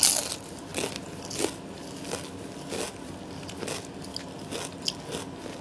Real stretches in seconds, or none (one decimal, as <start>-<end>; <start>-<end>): 0.0-5.6